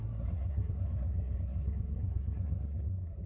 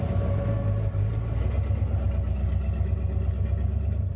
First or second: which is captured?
second